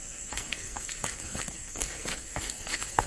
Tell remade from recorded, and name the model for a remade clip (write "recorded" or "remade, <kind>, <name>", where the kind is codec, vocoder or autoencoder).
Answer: remade, codec, SNAC